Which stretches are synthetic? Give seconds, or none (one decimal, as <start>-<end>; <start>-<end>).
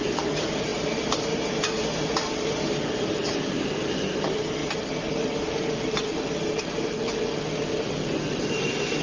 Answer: none